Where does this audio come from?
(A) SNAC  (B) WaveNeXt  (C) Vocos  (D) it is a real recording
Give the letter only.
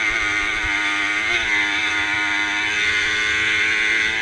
D